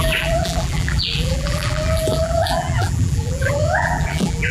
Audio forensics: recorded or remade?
remade